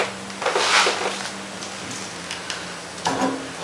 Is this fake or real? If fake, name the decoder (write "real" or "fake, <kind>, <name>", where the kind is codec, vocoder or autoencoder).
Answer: real